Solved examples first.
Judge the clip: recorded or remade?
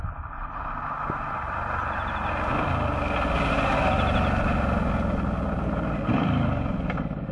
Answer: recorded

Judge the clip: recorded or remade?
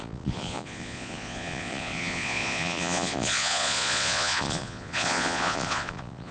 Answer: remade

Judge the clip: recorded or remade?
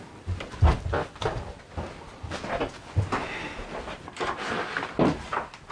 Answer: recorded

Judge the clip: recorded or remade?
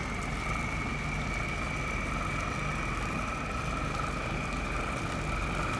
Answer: recorded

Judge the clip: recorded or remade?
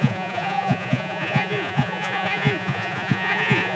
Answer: remade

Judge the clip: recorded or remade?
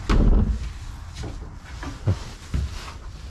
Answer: recorded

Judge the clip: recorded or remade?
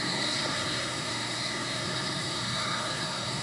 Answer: remade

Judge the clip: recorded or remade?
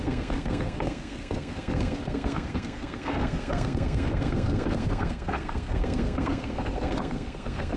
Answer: remade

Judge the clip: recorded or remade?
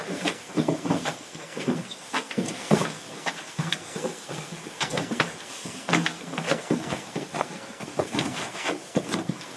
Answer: remade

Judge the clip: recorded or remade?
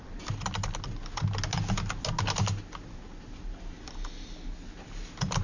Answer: recorded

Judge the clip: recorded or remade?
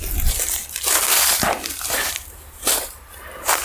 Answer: remade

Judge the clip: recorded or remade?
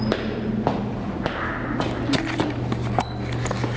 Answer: recorded